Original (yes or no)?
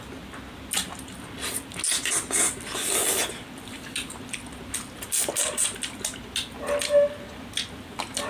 yes